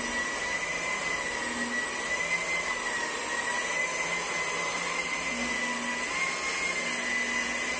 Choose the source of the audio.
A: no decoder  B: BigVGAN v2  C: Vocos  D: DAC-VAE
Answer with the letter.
A